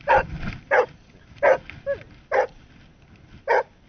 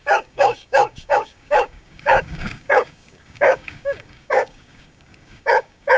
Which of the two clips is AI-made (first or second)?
second